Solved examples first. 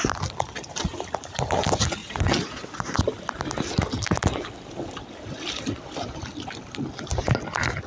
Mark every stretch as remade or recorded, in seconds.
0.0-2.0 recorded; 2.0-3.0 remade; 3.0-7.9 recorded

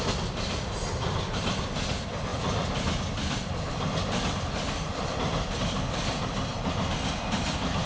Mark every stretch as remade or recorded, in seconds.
0.0-7.9 recorded

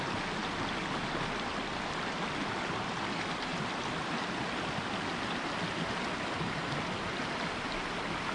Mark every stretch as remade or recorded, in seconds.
0.0-8.3 recorded

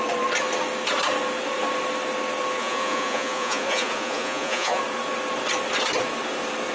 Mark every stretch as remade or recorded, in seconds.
0.0-2.6 recorded; 2.6-4.8 remade; 4.8-6.7 recorded

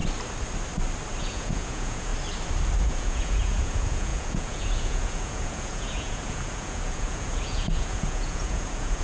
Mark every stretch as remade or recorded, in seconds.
0.0-1.2 recorded; 1.2-2.1 remade; 2.1-2.8 recorded; 2.8-9.0 remade